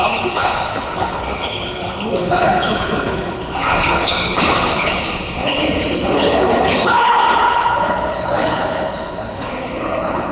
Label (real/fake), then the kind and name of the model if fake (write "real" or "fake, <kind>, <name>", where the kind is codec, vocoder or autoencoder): fake, codec, HILCodec